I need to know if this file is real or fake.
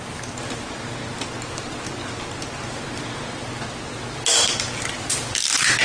real